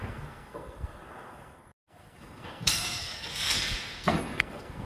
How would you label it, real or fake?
fake